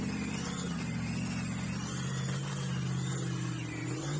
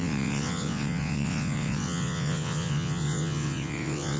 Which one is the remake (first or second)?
second